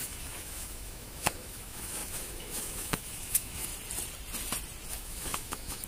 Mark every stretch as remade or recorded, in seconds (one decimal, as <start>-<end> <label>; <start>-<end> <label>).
0.0-3.7 remade; 3.7-4.9 recorded; 4.9-5.9 remade